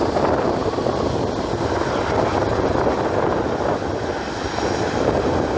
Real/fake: real